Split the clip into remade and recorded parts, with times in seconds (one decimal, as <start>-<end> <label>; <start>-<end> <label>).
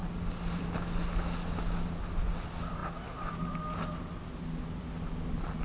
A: 0.0-5.6 recorded